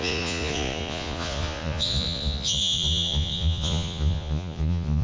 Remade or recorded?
remade